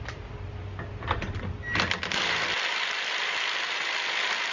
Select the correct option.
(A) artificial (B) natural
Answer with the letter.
B